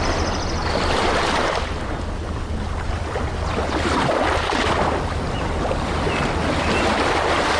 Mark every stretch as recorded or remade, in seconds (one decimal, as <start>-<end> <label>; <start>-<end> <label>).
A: 0.0-7.6 recorded